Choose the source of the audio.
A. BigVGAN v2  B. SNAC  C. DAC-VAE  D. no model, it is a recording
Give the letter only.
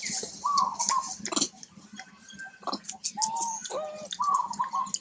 D